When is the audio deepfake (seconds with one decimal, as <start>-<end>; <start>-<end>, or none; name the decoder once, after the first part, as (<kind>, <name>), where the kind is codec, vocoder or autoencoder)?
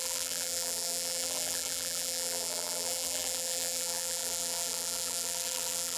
0.0-6.0 (vocoder, BigVGAN v2)